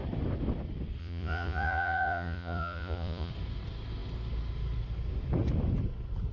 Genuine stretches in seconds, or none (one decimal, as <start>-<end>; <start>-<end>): 0.0-1.0; 3.3-6.3